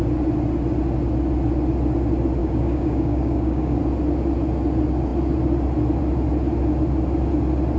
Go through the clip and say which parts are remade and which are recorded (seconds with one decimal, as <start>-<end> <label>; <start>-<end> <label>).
0.0-2.4 recorded; 2.4-3.8 remade; 3.8-7.8 recorded